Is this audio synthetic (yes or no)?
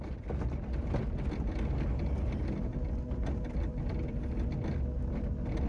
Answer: no